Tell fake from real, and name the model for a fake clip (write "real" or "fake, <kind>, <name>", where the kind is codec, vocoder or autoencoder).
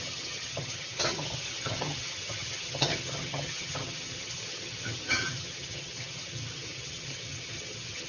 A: fake, vocoder, HiFi-GAN